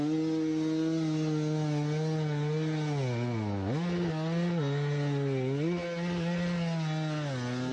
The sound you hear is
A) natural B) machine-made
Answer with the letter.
A